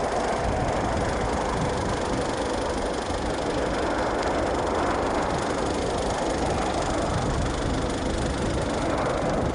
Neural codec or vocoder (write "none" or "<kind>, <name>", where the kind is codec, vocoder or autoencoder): none